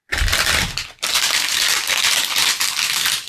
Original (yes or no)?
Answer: yes